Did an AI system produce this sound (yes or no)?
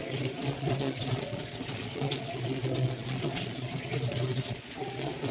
yes